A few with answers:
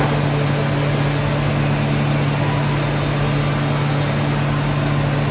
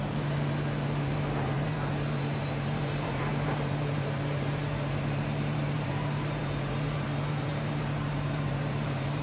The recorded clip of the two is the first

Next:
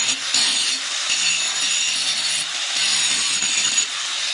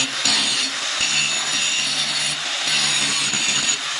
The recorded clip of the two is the second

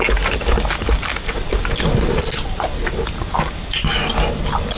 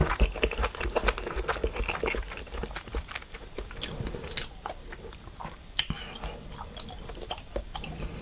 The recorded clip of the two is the first